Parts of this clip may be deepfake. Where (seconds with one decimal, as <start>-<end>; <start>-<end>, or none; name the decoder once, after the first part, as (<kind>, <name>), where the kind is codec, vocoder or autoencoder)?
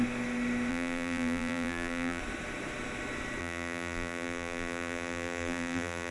0.7-2.2 (vocoder, BigVGAN v2); 3.4-6.1